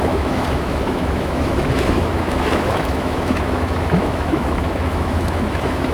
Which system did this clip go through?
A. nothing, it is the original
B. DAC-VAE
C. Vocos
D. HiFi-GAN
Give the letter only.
B